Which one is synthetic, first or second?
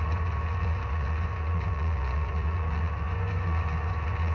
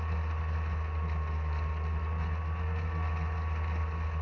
first